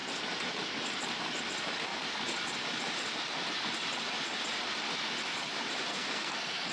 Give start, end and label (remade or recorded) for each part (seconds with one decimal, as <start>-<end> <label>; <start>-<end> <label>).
0.0-5.9 recorded; 5.9-6.7 remade